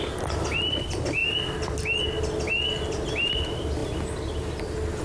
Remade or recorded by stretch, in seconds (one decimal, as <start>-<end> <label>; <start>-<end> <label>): 0.0-5.0 recorded

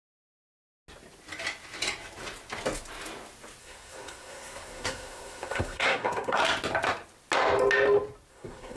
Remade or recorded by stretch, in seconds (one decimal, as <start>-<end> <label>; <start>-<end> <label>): 0.0-3.6 recorded; 3.6-6.4 remade; 6.4-8.3 recorded; 8.3-8.8 remade